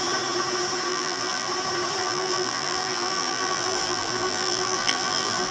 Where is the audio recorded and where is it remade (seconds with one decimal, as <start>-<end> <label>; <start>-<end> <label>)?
0.0-0.9 recorded; 0.9-1.5 remade; 1.5-2.0 recorded; 2.0-5.5 remade